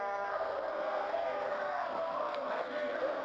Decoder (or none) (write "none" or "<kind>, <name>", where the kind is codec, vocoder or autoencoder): codec, SNAC